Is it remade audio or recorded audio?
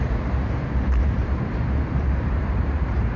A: remade